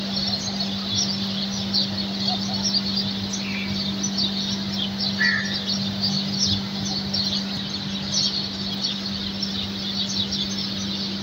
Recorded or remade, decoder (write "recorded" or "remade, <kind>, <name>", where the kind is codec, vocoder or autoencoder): recorded